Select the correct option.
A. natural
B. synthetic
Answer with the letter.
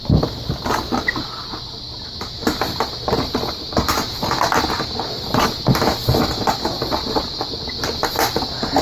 A